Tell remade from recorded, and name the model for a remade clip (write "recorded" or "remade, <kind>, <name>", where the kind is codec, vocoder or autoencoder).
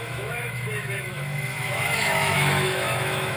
remade, autoencoder, DAC-VAE